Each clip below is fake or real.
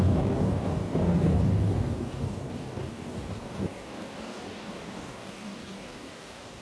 fake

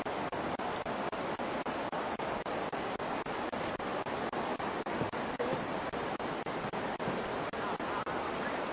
real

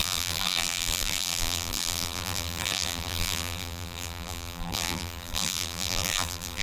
fake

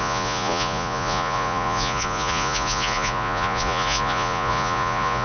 fake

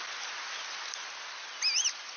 real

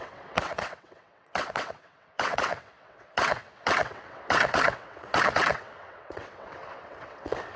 fake